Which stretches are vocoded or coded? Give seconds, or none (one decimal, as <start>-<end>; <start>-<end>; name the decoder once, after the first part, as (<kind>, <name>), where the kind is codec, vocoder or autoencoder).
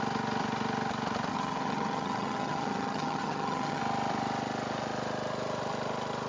1.3-3.8 (vocoder, HiFi-GAN)